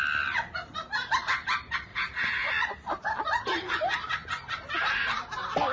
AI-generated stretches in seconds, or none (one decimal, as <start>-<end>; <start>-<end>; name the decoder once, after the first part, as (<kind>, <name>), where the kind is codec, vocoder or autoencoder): 1.9-2.5 (vocoder, Vocos)